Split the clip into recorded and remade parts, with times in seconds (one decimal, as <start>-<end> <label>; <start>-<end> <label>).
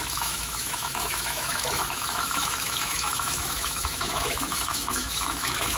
0.0-5.8 remade